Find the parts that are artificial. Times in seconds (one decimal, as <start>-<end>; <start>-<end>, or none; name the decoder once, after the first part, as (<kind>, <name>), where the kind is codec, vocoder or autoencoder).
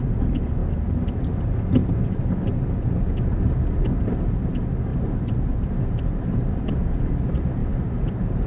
0.6-1.4 (vocoder, BigVGAN v2); 4.9-7.0; 7.6-8.5